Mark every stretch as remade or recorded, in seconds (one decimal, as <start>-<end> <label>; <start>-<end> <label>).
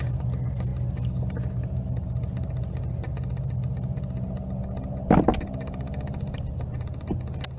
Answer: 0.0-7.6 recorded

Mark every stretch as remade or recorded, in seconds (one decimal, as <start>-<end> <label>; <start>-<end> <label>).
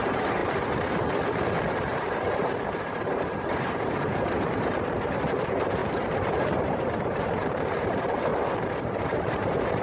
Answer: 0.0-0.4 remade; 0.4-1.7 recorded; 1.7-5.8 remade; 5.8-6.6 recorded; 6.6-8.3 remade; 8.3-9.0 recorded; 9.0-9.8 remade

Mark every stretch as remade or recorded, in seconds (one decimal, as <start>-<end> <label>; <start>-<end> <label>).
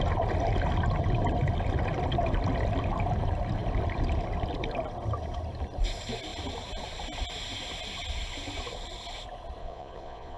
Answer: 0.0-9.6 recorded; 9.6-10.4 remade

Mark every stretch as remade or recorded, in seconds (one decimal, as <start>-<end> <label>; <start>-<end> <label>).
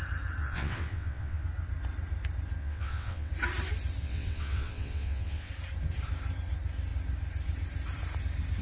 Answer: 0.0-0.4 recorded; 0.4-1.4 remade; 1.4-2.6 recorded; 2.6-3.3 remade; 3.3-4.0 recorded; 4.0-5.5 remade; 5.5-8.6 recorded